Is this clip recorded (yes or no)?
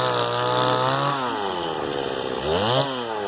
yes